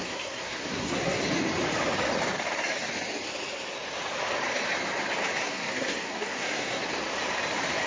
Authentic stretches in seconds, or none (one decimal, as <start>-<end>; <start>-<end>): 1.2-5.4; 6.8-7.9